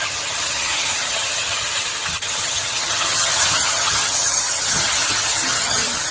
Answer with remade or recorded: remade